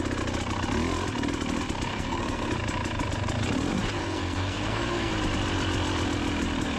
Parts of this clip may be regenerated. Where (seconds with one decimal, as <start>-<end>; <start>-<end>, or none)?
1.9-2.5; 4.0-5.1